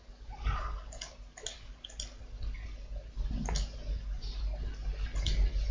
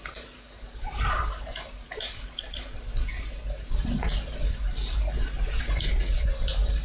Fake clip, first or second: second